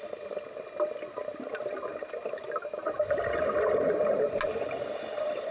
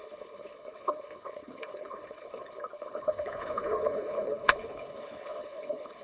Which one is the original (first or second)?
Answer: first